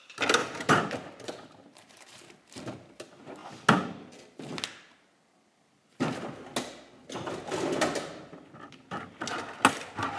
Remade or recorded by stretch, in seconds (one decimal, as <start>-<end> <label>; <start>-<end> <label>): 0.0-0.4 recorded; 0.4-2.4 remade; 2.4-10.2 recorded